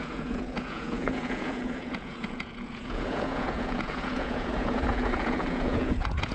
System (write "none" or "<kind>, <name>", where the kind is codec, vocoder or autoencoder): vocoder, Vocos